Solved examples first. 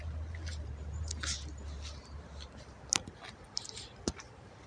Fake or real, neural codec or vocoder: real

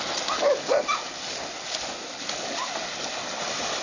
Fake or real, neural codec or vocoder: real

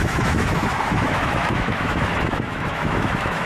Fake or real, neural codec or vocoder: fake, autoencoder, DAC-VAE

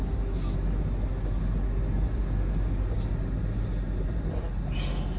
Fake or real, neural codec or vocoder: real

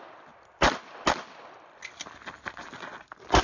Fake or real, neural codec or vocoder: real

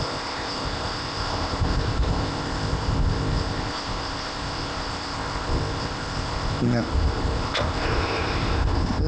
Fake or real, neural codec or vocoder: fake, codec, ZipCodec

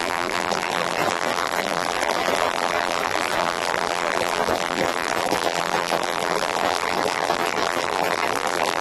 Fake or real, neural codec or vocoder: fake, vocoder, BigVGAN v2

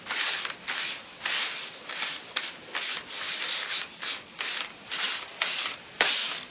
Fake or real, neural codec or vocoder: real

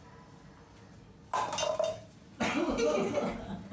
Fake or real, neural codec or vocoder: real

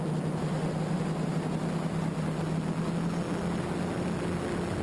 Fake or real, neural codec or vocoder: real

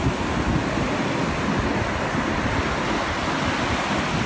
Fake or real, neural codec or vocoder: real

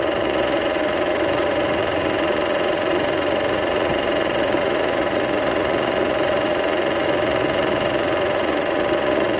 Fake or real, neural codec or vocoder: fake, vocoder, Vocos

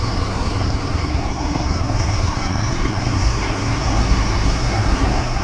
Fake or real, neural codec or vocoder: fake, codec, SNAC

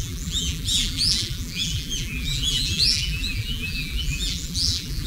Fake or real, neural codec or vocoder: fake, vocoder, BigVGAN v2